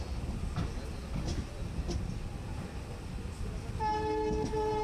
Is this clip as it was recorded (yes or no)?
yes